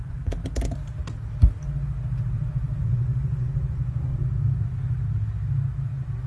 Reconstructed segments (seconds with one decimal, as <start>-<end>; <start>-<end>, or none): 0.0-0.4; 2.8-4.1

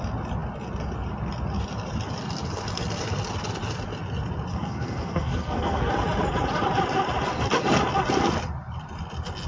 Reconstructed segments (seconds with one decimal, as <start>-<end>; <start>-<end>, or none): 4.5-5.9

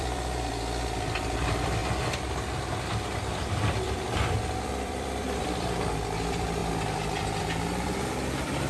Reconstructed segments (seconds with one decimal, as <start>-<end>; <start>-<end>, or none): 0.0-1.8; 3.3-6.6; 7.4-8.7

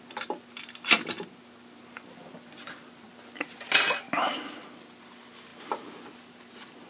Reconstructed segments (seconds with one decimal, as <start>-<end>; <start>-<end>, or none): none